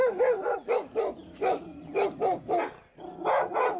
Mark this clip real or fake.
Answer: real